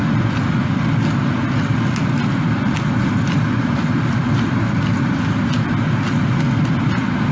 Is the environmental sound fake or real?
real